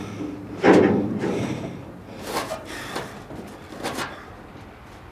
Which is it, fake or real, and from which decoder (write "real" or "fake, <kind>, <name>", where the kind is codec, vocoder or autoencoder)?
fake, vocoder, BigVGAN v2